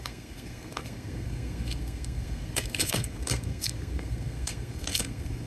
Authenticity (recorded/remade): remade